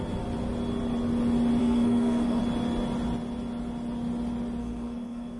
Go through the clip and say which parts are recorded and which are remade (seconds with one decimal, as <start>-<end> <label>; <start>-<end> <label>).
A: 0.0-1.6 recorded; 1.6-2.4 remade; 2.4-4.6 recorded; 4.6-5.4 remade